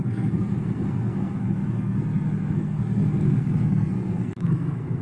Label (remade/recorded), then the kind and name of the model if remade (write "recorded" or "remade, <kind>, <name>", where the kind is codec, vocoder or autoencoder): remade, codec, SNAC